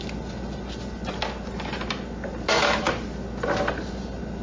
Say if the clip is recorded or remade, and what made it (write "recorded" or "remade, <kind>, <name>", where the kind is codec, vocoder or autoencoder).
recorded